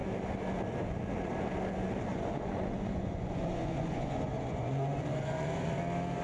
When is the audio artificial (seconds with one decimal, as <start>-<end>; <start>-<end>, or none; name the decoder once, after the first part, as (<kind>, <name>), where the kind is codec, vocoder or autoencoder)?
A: 2.1-5.8 (vocoder, Vocos)